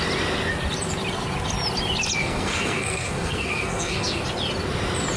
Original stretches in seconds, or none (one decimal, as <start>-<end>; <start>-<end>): 0.0-2.2; 4.2-5.2